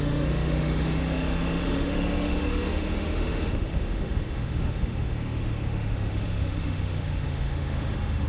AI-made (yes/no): yes